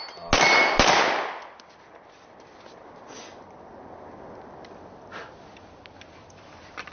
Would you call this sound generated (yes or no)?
no